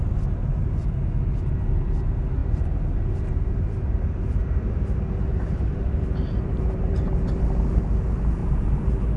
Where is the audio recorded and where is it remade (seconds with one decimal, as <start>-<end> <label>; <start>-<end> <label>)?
0.0-2.4 recorded; 2.4-4.4 remade; 4.4-5.3 recorded; 5.3-7.2 remade; 7.2-8.4 recorded; 8.4-9.2 remade